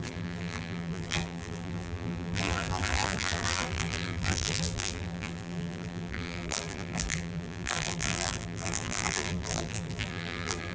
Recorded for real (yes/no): no